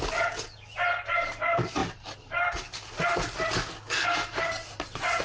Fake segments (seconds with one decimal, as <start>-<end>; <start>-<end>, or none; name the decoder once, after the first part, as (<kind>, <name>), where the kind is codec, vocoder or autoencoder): none